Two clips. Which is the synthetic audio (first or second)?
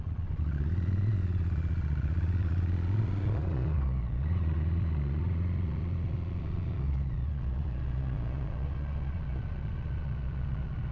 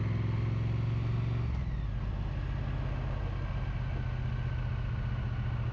first